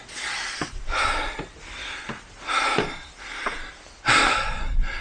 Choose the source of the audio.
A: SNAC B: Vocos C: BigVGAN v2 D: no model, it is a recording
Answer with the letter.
D